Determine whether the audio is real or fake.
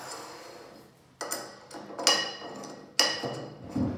real